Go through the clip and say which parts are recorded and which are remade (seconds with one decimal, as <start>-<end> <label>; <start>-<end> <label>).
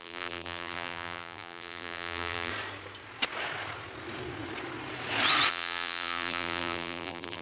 0.0-2.5 remade; 2.5-5.5 recorded; 5.5-7.4 remade